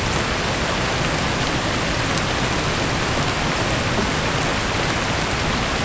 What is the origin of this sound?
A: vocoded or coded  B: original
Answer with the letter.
B